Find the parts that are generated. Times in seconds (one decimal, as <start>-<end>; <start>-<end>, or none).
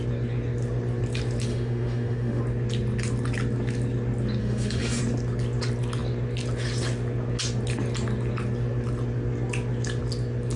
1.5-2.4; 4.4-5.0